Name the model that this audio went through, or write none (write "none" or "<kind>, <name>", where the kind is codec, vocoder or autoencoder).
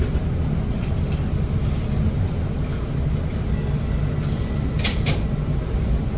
none